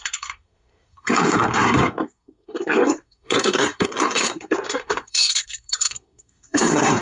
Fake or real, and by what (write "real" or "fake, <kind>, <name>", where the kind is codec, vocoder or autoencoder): fake, codec, SNAC